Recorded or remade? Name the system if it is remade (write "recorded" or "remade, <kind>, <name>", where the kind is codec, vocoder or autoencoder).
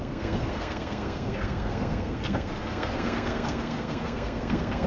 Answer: remade, codec, SNAC